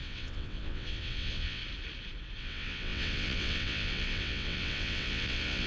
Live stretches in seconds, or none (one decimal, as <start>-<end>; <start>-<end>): 1.6-2.4